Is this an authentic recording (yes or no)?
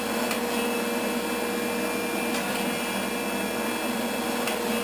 yes